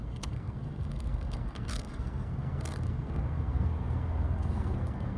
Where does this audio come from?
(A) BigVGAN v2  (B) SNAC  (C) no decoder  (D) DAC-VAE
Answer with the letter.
B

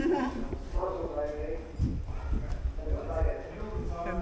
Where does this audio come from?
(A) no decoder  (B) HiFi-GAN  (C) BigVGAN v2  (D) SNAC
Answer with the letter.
A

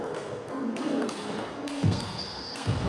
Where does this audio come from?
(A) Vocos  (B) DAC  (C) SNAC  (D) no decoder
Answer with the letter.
C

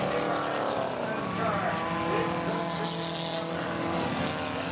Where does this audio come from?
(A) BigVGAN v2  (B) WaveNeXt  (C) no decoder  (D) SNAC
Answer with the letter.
C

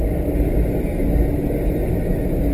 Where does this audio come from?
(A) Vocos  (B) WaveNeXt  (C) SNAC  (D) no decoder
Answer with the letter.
D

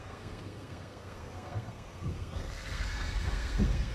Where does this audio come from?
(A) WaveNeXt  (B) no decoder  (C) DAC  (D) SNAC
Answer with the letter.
D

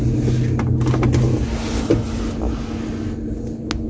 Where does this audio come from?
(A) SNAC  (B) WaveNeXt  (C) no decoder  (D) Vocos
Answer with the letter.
C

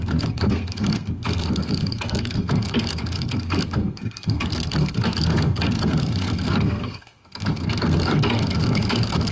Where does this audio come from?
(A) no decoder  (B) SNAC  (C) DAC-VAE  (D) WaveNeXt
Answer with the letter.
B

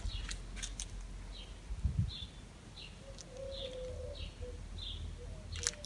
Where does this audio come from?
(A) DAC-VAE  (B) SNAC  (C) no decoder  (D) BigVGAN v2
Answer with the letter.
C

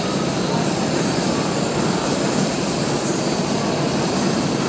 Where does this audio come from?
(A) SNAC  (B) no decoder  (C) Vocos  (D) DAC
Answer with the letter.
B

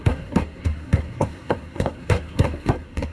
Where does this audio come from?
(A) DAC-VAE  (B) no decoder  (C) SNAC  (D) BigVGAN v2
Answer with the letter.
C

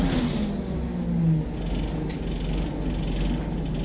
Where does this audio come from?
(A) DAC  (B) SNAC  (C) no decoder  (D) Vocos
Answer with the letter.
C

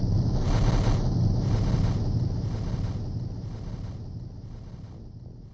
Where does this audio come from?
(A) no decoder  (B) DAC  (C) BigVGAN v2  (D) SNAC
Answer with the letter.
A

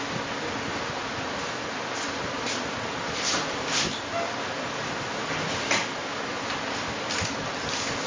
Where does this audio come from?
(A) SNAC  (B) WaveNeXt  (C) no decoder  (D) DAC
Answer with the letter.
C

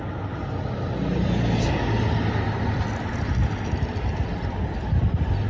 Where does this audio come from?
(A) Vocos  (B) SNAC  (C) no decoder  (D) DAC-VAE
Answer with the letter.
C